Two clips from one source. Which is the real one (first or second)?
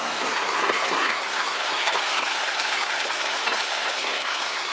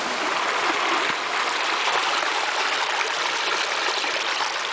second